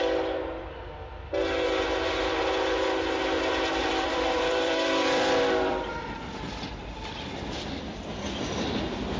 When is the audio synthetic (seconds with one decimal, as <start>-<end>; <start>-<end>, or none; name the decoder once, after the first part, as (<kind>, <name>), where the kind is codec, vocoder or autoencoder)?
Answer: 3.8-6.7 (vocoder, BigVGAN v2)